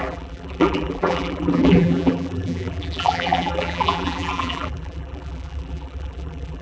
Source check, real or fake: fake